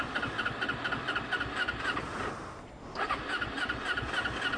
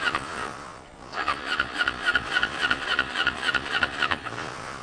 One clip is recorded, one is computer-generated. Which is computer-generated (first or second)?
second